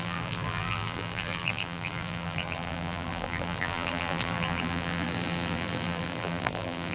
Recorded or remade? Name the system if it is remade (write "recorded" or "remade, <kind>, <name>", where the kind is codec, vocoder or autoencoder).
remade, vocoder, BigVGAN v2